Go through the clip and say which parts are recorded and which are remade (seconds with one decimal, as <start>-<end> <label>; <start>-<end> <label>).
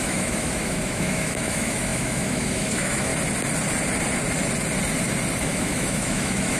0.0-3.1 remade; 3.1-5.4 recorded; 5.4-6.6 remade